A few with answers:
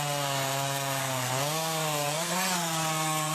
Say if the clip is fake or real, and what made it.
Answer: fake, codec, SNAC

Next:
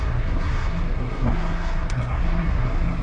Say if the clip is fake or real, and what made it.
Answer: fake, codec, SNAC